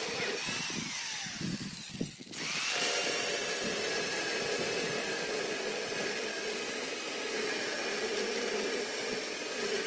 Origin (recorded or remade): recorded